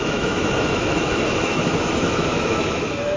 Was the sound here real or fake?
fake